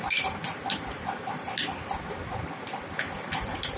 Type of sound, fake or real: real